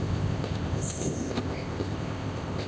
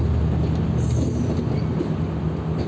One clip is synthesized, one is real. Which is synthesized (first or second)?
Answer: first